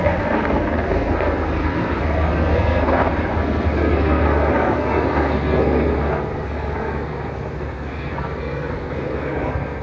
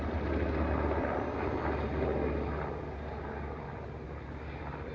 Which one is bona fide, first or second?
second